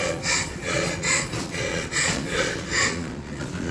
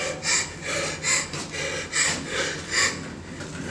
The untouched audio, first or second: second